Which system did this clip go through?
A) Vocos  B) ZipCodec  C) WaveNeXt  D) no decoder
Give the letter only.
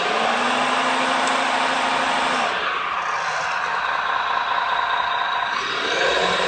D